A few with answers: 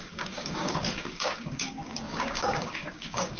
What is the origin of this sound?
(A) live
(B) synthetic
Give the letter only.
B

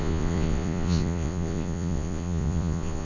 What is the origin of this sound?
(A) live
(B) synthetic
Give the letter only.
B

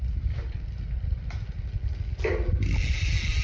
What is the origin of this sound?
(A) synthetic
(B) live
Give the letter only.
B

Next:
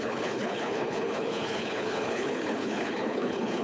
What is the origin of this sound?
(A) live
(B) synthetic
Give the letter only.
B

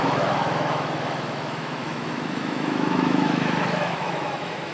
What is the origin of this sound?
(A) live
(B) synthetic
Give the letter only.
B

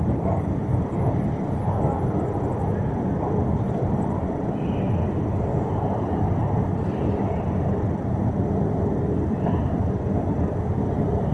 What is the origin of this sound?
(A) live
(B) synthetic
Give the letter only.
A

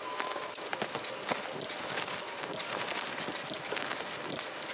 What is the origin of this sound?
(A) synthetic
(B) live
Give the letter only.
B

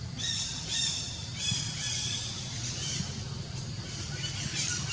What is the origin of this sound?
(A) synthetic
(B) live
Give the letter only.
A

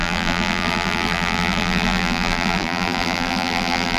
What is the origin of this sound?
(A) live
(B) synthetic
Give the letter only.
B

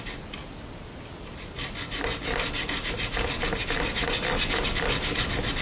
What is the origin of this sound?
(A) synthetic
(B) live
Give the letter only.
B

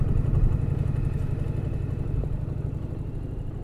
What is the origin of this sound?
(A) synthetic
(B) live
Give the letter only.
B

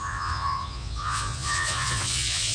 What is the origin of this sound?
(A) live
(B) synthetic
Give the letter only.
B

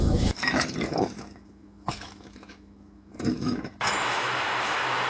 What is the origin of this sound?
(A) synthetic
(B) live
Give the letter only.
A